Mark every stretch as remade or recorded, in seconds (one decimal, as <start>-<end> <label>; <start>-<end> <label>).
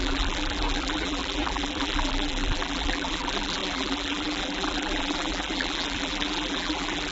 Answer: 0.0-7.1 remade